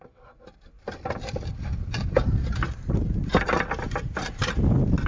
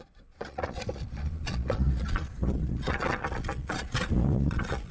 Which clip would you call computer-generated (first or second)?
second